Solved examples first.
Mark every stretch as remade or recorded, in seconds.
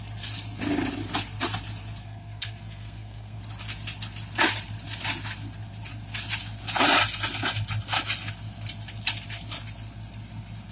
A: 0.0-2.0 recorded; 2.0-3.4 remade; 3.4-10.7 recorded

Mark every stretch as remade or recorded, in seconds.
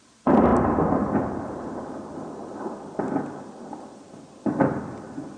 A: 0.0-5.4 recorded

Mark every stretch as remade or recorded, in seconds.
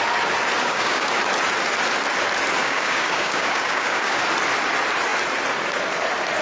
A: 0.0-0.6 recorded; 0.6-1.2 remade; 1.2-2.6 recorded; 2.6-4.2 remade; 4.2-6.4 recorded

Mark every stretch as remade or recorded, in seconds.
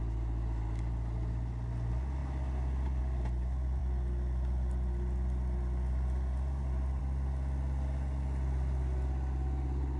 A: 0.0-10.0 recorded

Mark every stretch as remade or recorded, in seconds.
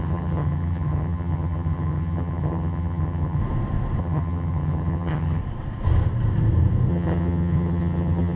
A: 0.0-3.4 remade; 3.4-4.0 recorded; 4.0-5.4 remade; 5.4-6.9 recorded; 6.9-8.4 remade